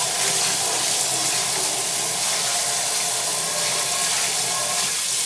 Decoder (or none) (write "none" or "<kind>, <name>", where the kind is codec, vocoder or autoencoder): none